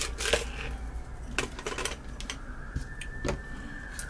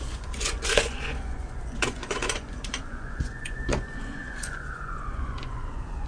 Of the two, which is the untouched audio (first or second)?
first